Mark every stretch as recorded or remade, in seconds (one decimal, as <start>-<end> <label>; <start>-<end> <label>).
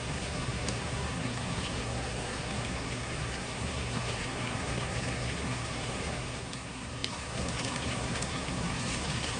0.0-9.4 remade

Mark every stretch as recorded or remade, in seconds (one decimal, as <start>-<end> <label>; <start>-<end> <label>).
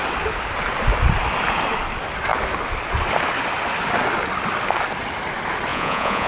0.0-5.7 recorded; 5.7-6.3 remade